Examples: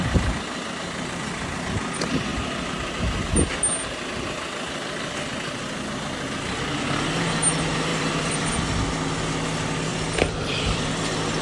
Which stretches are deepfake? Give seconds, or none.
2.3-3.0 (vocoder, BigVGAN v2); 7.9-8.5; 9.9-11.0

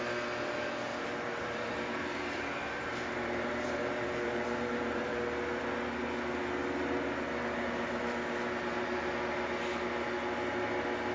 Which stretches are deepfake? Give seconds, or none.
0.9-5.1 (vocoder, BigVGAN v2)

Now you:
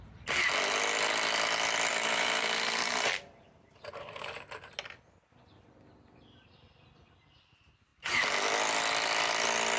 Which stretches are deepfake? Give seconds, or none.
1.9-4.7 (vocoder, BigVGAN v2)

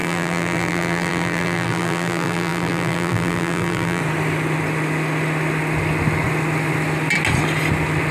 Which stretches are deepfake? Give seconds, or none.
0.0-4.0 (vocoder, BigVGAN v2)

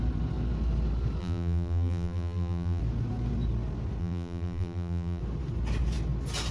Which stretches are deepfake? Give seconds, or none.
1.2-2.8 (vocoder, BigVGAN v2); 4.0-5.2

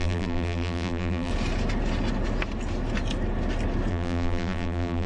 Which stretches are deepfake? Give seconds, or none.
0.0-1.3 (vocoder, BigVGAN v2); 3.9-5.1

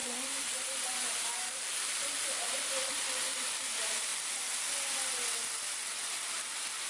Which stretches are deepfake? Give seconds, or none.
0.0-4.1 (vocoder, BigVGAN v2); 6.3-6.9